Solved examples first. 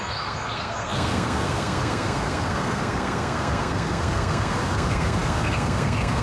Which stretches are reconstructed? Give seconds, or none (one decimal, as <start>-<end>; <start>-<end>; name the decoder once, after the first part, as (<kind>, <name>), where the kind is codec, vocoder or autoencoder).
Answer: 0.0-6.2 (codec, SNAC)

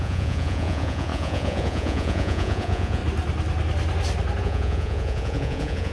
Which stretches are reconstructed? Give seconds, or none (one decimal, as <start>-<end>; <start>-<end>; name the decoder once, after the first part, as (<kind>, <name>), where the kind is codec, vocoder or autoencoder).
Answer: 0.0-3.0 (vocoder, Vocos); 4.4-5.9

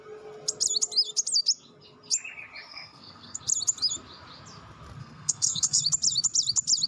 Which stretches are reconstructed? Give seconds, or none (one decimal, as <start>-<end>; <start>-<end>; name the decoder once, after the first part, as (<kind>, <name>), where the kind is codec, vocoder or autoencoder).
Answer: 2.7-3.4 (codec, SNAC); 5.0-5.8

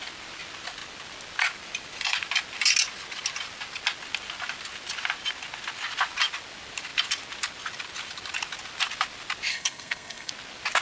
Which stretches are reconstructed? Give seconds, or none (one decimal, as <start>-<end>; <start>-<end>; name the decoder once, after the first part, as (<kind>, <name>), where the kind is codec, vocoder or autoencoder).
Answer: 9.5-10.3 (codec, SNAC)

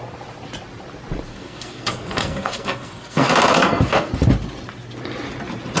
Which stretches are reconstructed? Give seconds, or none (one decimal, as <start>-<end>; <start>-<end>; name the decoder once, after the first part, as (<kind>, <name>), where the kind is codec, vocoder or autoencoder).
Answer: 1.3-4.1 (codec, SNAC)

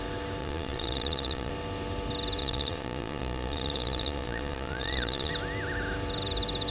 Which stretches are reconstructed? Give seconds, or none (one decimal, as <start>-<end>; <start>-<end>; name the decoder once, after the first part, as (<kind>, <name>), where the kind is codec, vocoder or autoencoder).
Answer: 0.4-1.5 (vocoder, Vocos); 2.4-5.3